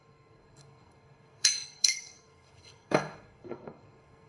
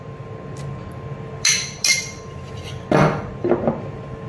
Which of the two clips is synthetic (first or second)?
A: first